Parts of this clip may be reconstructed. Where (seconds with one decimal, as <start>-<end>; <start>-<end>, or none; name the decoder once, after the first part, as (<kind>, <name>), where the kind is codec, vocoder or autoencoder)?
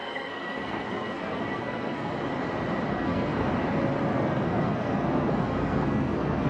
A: 0.0-2.1 (codec, SNAC); 2.9-3.5; 4.1-6.5